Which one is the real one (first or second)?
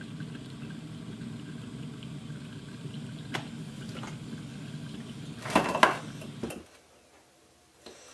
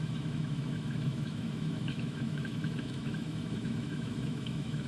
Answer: first